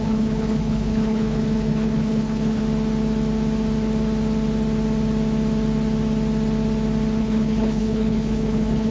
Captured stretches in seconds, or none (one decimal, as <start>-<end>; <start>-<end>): 2.6-7.2